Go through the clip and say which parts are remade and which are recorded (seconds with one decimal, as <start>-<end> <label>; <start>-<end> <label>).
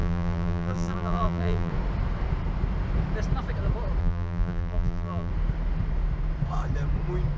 0.0-1.7 remade; 1.7-4.0 recorded; 4.0-5.3 remade; 5.3-7.4 recorded